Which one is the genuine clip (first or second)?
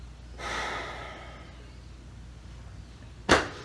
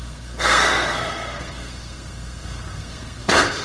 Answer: first